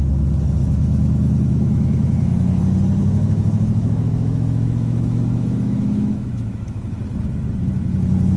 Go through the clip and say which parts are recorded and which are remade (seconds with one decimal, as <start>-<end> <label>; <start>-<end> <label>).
0.0-0.6 recorded; 0.6-2.6 remade; 2.6-3.0 recorded; 3.0-7.0 remade; 7.0-8.4 recorded